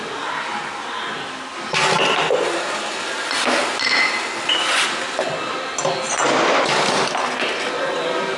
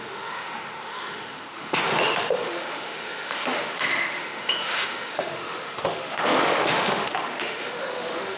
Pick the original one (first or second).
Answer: first